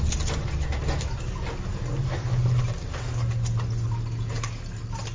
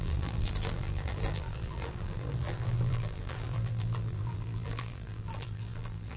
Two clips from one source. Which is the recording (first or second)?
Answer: first